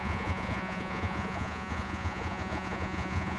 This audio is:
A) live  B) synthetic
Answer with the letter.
B